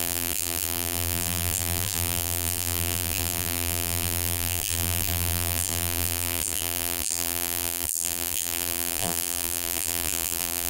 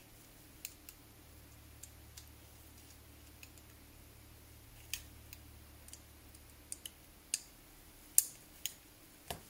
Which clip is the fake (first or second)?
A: first